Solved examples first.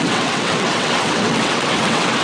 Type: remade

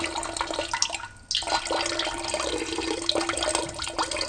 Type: recorded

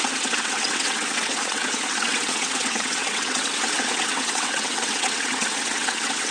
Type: remade